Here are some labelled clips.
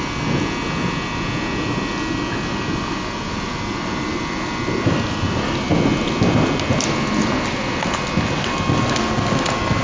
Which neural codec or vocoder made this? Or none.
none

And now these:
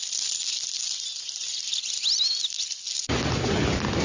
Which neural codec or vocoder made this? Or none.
none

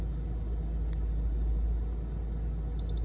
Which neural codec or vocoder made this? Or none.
none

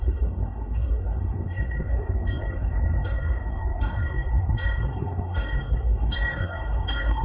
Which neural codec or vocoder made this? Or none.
codec, SNAC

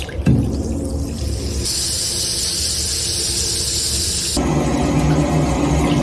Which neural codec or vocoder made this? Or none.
none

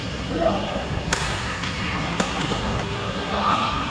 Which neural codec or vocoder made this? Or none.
codec, SNAC